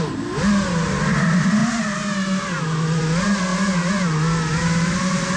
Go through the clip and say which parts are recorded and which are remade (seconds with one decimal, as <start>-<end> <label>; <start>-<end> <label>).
0.0-5.4 recorded